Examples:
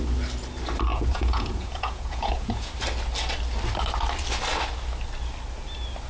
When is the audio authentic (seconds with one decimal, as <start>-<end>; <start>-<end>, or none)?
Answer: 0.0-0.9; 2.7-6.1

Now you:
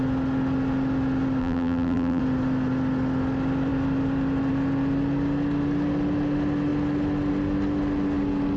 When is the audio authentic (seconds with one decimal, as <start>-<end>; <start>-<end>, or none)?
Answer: 0.0-1.4; 2.2-8.6

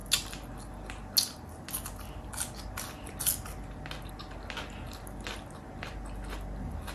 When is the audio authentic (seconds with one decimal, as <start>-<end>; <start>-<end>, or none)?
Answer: 0.0-6.9

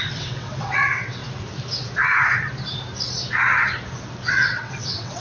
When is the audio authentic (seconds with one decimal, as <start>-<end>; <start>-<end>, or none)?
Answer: 1.2-4.3

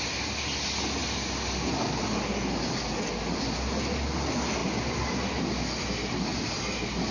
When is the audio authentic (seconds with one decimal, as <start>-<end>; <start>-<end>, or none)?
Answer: 0.0-7.1

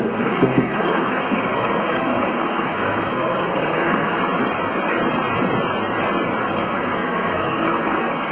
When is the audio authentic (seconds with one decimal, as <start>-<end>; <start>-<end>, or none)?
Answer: 4.2-6.4

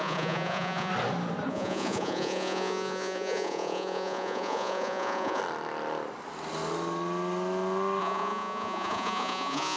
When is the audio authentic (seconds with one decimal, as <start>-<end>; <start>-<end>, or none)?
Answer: 0.9-1.5; 5.4-8.0